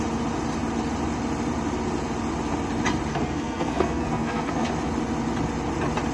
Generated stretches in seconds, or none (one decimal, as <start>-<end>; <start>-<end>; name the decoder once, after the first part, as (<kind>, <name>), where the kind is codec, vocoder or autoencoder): 3.1-4.7 (codec, SNAC)